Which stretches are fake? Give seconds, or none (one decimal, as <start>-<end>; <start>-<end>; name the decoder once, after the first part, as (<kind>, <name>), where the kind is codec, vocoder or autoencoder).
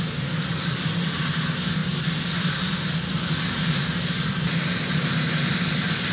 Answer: none